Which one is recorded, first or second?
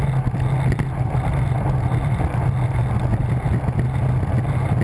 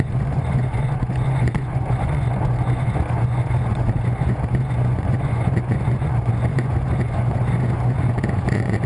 first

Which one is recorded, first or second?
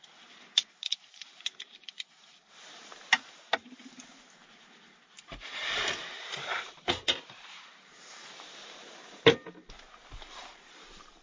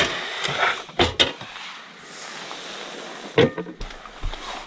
second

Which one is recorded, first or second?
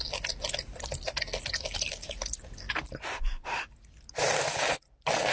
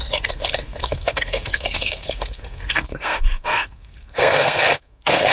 first